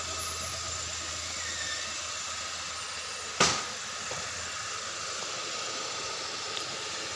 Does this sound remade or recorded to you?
recorded